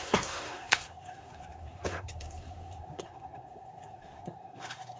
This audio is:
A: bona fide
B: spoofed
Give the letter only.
B